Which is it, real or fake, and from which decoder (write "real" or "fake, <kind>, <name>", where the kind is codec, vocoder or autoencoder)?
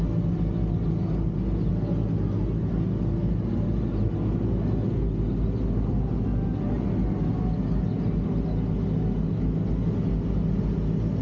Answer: real